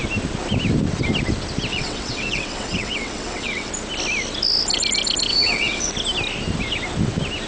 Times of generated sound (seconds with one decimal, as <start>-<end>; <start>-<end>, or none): 1.7-3.7; 5.3-5.9